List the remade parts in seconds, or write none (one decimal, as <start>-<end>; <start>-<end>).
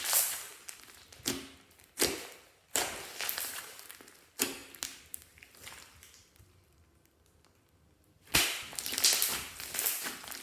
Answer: none